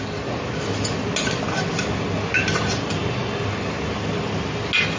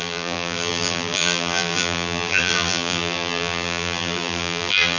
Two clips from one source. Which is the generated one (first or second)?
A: second